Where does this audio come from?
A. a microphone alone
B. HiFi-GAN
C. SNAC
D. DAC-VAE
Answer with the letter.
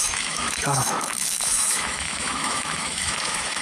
D